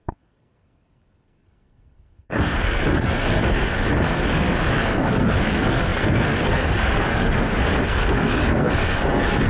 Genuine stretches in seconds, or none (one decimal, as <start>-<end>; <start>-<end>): none